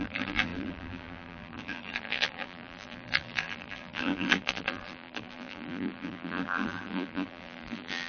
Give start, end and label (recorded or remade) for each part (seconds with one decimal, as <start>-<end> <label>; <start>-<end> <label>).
0.0-8.1 remade